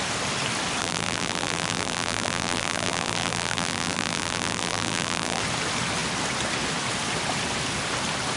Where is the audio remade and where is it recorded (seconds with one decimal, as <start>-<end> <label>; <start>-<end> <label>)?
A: 0.0-0.8 recorded; 0.8-5.4 remade; 5.4-8.4 recorded